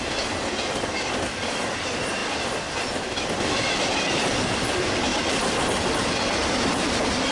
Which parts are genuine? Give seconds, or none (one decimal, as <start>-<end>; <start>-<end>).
none